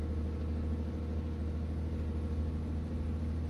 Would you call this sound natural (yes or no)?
yes